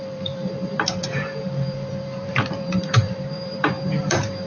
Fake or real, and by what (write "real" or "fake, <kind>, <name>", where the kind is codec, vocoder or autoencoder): fake, vocoder, BigVGAN v2